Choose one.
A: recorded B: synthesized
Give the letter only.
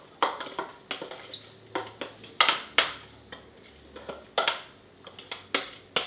A